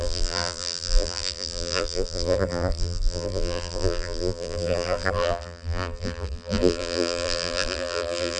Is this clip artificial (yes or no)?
yes